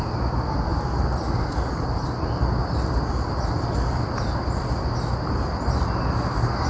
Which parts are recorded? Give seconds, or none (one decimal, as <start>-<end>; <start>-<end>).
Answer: 0.0-6.7